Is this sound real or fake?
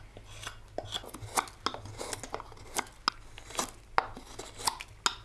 real